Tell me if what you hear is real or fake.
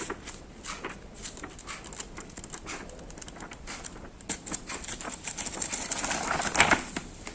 real